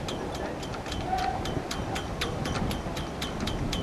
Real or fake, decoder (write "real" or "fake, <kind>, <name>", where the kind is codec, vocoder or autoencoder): real